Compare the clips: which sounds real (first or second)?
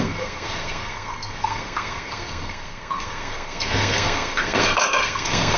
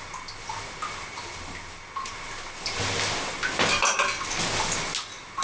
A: second